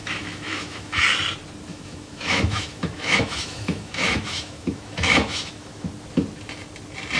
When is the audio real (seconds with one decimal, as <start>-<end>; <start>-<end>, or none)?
1.0-1.7; 5.9-7.2